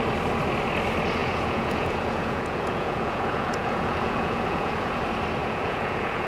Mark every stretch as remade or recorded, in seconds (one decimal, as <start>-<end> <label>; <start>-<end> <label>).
0.0-1.2 recorded; 1.2-5.0 remade; 5.0-5.4 recorded; 5.4-6.3 remade